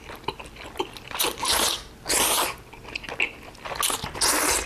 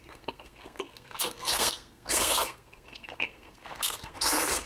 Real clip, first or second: first